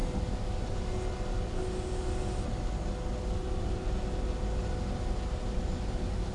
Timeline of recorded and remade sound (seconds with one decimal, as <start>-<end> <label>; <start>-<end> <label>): 0.0-6.3 recorded